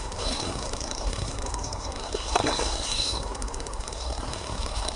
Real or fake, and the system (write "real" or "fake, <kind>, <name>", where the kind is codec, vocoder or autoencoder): fake, codec, SNAC